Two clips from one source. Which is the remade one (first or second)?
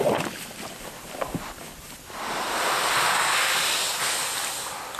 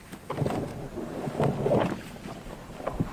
first